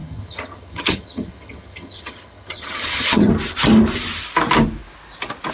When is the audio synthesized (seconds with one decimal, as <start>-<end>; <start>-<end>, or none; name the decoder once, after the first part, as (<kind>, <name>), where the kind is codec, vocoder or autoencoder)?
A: 0.0-3.3 (vocoder, HiFi-GAN)